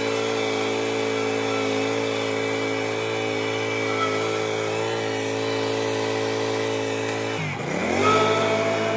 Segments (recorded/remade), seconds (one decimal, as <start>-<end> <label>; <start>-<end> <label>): 0.0-9.0 recorded